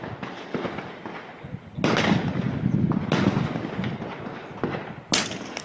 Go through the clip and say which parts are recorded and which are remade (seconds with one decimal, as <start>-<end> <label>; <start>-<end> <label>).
0.0-5.6 recorded